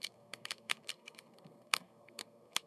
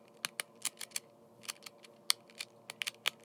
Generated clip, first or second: first